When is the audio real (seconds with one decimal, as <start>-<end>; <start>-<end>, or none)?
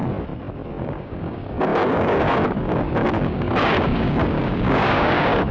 0.0-0.8